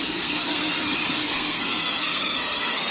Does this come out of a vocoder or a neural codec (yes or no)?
yes